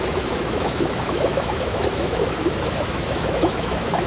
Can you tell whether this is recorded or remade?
remade